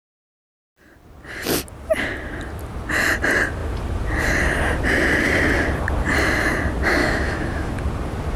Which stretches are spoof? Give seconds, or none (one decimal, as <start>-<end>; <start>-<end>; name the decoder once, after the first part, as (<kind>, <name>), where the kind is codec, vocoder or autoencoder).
7.0-7.7 (autoencoder, DAC-VAE)